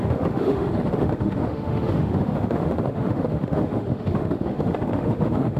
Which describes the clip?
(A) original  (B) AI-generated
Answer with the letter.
B